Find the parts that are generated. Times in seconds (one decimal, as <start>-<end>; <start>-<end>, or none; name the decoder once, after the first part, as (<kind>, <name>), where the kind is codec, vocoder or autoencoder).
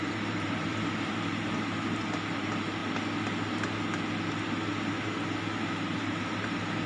0.0-2.8 (vocoder, BigVGAN v2); 5.7-6.9